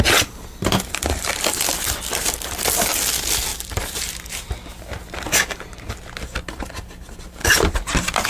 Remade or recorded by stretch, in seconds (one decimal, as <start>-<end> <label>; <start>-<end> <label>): 0.0-3.5 recorded; 3.5-4.6 remade; 4.6-8.3 recorded